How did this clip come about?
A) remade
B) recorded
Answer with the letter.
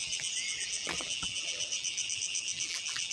A